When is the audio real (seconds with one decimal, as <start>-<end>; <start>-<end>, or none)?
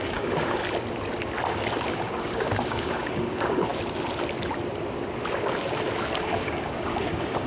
0.6-1.9; 3.7-6.2